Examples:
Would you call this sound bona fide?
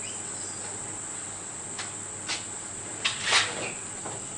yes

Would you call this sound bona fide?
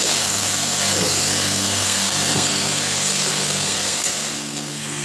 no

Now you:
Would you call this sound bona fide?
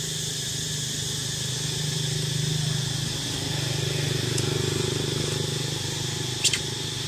yes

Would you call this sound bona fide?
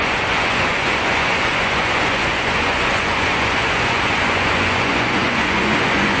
no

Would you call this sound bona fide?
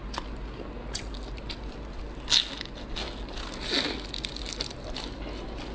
yes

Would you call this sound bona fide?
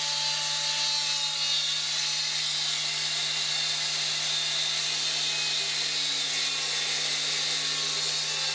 yes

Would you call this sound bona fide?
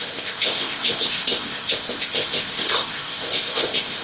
no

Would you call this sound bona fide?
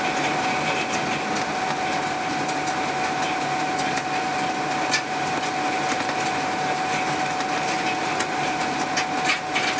yes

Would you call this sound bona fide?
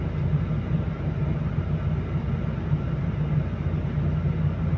yes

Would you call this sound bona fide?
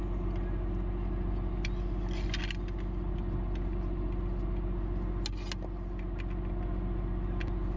yes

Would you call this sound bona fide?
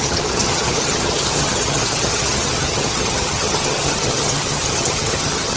no